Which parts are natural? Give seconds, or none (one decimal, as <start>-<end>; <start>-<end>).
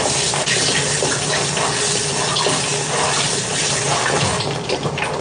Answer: 0.0-5.2